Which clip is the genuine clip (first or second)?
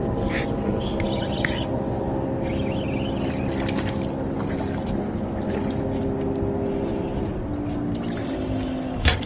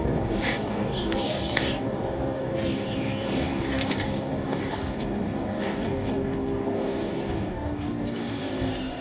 first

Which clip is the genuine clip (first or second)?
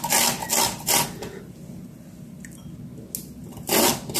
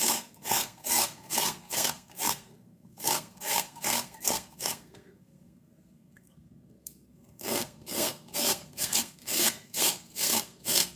first